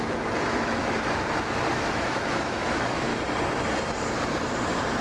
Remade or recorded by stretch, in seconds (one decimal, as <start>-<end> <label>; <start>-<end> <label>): 0.0-0.8 remade; 0.8-1.7 recorded; 1.7-3.1 remade; 3.1-5.0 recorded